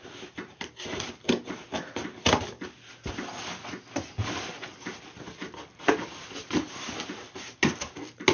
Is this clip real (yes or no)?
yes